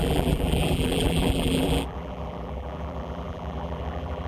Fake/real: fake